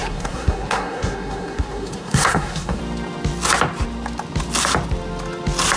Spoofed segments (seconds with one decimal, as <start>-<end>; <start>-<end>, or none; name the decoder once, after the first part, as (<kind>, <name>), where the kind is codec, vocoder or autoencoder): 0.0-2.8 (codec, SNAC)